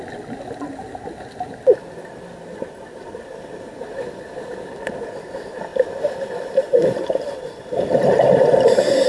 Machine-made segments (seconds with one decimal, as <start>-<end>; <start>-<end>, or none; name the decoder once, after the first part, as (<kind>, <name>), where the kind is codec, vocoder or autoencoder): 5.7-9.1 (vocoder, BigVGAN v2)